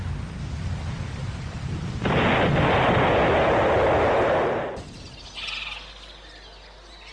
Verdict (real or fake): real